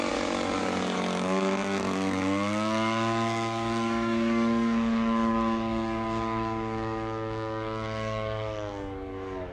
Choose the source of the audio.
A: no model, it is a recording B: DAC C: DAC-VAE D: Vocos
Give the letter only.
B